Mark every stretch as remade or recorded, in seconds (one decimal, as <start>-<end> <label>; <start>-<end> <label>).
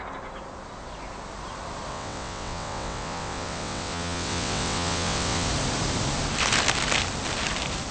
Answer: 0.0-1.9 recorded; 1.9-5.5 remade; 5.5-7.9 recorded